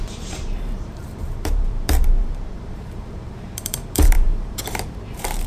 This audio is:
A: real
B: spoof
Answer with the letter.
B